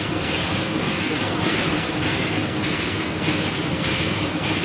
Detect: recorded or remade remade